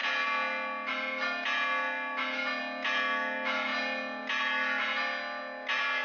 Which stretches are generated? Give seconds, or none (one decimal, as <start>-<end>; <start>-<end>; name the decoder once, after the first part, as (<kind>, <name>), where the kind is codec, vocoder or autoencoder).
none